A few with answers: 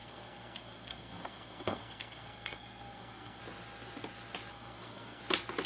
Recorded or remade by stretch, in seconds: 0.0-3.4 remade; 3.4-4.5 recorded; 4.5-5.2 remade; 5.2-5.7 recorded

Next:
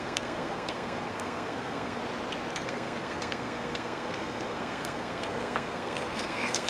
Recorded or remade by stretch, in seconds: 0.0-2.0 remade; 2.0-2.5 recorded; 2.5-6.7 remade

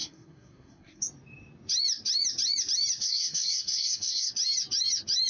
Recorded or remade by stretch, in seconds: 0.0-1.0 remade; 1.0-3.0 recorded; 3.0-4.3 remade; 4.3-5.3 recorded